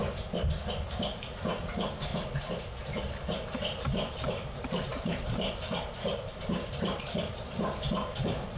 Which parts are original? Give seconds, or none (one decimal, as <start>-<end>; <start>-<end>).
0.0-0.9; 2.1-2.8